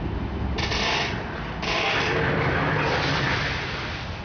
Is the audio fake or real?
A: real